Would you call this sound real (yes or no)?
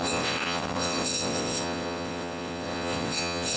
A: no